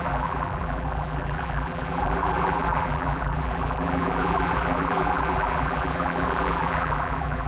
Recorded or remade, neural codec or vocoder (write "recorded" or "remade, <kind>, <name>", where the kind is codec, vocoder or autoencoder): remade, vocoder, BigVGAN v2